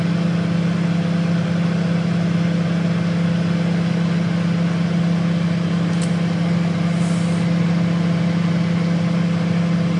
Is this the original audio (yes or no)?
yes